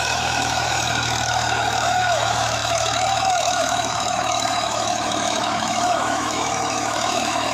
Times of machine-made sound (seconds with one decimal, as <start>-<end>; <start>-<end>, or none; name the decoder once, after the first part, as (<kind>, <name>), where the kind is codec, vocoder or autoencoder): 0.0-7.5 (autoencoder, DAC-VAE)